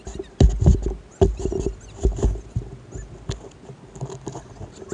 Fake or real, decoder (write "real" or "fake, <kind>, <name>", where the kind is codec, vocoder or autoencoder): real